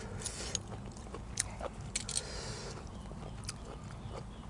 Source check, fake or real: real